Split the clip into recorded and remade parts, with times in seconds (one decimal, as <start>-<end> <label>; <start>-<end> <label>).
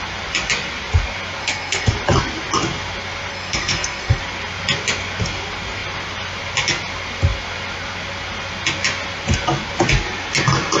0.0-1.4 recorded; 1.4-1.9 remade; 1.9-3.3 recorded; 3.3-4.2 remade; 4.2-10.8 recorded